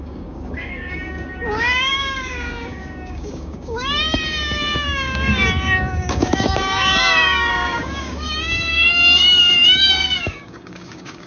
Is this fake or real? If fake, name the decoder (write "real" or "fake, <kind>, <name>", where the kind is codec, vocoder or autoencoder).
fake, codec, DAC